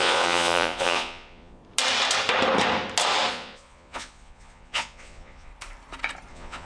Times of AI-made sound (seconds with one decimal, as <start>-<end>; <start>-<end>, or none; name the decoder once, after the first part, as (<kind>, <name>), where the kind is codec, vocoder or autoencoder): 0.0-1.6 (vocoder, Vocos); 3.3-5.5; 6.3-6.7